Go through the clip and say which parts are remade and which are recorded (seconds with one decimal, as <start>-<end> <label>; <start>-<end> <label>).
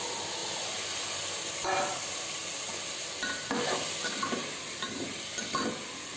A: 0.0-6.2 recorded